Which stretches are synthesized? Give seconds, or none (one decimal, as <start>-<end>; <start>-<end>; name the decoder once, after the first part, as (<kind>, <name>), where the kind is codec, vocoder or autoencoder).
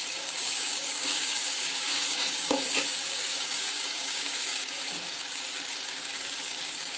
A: 0.0-7.0 (codec, DAC)